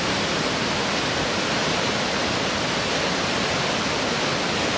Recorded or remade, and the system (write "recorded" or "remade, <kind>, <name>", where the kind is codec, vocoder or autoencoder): remade, vocoder, BigVGAN v2